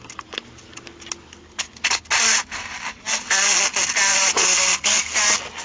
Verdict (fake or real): real